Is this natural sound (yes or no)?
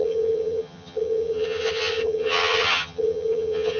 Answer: no